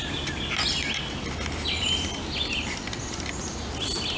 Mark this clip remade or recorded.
recorded